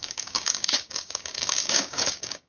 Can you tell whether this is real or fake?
fake